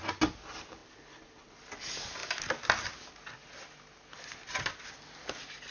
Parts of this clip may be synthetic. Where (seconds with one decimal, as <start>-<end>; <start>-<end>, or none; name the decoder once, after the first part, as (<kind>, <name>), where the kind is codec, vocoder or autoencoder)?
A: none